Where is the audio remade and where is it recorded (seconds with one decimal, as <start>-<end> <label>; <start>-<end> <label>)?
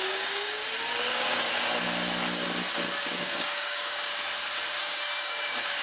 0.0-0.6 remade; 0.6-1.1 recorded; 1.1-1.5 remade; 1.5-3.2 recorded; 3.2-4.1 remade; 4.1-4.8 recorded; 4.8-5.8 remade